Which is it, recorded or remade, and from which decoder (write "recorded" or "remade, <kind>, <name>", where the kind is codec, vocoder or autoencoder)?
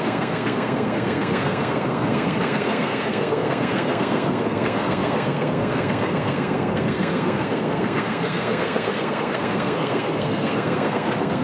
remade, codec, SNAC